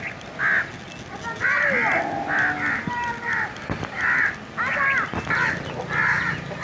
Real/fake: real